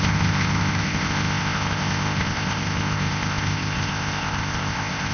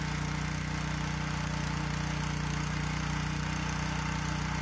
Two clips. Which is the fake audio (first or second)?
first